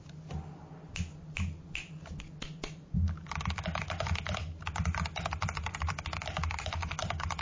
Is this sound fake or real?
real